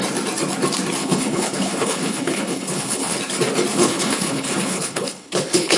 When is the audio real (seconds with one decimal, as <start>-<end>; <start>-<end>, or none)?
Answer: 0.0-1.0; 3.2-3.7